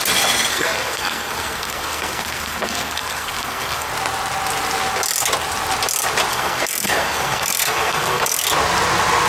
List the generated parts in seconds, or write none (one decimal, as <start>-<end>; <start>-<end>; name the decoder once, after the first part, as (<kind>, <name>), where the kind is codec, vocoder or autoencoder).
0.5-3.9 (codec, SNAC); 6.3-8.5